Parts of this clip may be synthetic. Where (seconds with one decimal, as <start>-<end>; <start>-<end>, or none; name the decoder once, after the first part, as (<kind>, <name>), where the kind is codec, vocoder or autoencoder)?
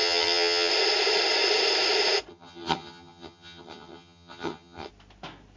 0.0-0.7 (vocoder, HiFi-GAN); 2.3-4.9